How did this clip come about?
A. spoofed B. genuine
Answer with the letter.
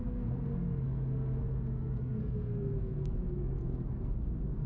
A